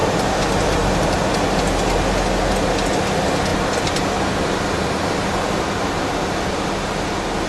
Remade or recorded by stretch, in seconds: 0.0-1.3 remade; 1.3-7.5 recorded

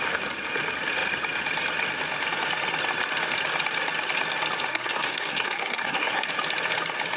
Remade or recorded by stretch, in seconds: 0.0-4.7 recorded; 4.7-6.3 remade; 6.3-7.2 recorded

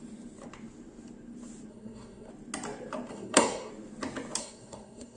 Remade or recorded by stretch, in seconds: 0.0-1.7 recorded; 1.7-2.3 remade; 2.3-3.1 recorded; 3.1-3.7 remade; 3.7-4.4 recorded; 4.4-5.2 remade

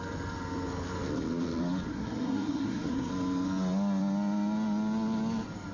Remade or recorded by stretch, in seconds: 0.0-1.9 recorded; 1.9-3.1 remade; 3.1-5.7 recorded

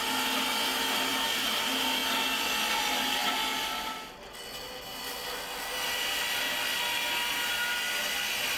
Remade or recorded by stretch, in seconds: 0.0-8.6 recorded

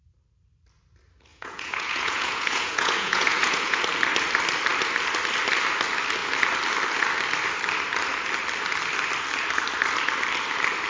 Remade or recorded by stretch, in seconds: 0.0-1.3 recorded; 1.3-3.8 remade; 3.8-10.9 recorded

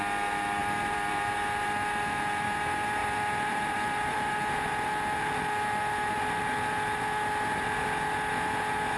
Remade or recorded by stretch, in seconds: 0.0-0.6 recorded; 0.6-1.2 remade; 1.2-3.0 recorded; 3.0-4.3 remade; 4.3-9.0 recorded

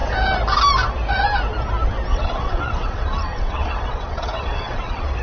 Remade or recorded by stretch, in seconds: 0.0-2.1 recorded; 2.1-5.2 remade